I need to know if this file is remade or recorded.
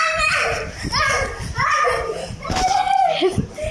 remade